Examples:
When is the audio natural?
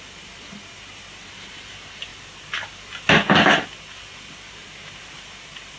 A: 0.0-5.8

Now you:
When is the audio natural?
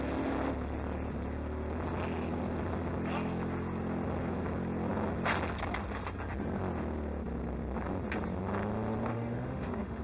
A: 0.0-9.1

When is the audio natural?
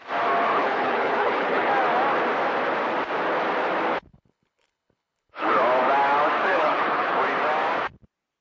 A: 0.0-0.5; 1.7-4.1; 5.6-6.4; 7.2-8.4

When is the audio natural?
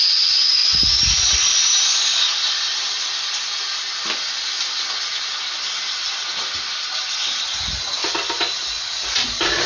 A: 0.0-9.7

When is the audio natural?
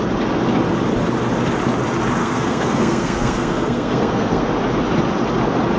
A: 0.0-2.2; 4.5-5.8